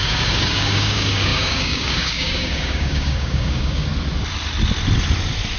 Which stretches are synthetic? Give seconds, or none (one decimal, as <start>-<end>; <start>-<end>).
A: 0.0-3.9